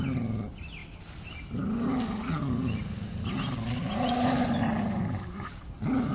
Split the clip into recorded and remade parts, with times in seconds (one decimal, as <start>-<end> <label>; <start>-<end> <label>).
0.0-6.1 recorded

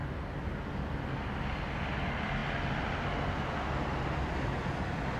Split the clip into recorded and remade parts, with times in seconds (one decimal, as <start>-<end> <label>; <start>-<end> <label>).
0.0-5.2 recorded

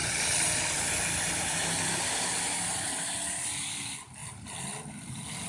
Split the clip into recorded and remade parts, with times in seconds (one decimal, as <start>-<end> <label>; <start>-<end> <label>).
0.0-2.0 remade; 2.0-4.2 recorded; 4.2-5.1 remade; 5.1-5.5 recorded

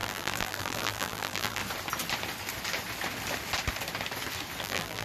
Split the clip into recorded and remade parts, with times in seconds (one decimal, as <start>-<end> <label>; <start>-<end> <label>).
0.0-1.6 remade; 1.6-4.6 recorded; 4.6-5.0 remade

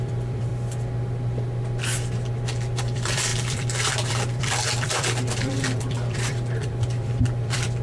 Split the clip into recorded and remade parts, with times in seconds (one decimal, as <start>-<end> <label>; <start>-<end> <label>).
0.0-0.5 remade; 0.5-2.8 recorded; 2.8-7.8 remade